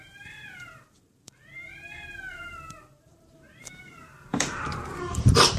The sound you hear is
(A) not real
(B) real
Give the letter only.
A